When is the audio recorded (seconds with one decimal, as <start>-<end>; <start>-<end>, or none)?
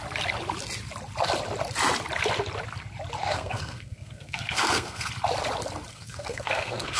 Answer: 0.0-3.2; 5.1-5.9